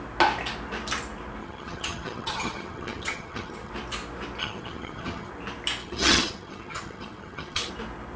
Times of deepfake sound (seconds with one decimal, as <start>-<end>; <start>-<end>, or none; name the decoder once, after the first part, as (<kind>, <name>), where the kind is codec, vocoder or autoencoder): 1.4-3.7 (vocoder, HiFi-GAN); 4.4-5.3; 5.8-7.7